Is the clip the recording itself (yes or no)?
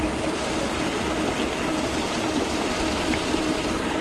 yes